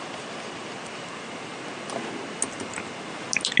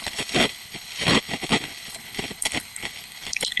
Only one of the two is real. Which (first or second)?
first